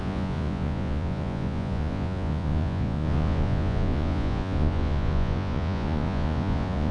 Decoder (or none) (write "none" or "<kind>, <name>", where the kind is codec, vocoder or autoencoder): vocoder, Vocos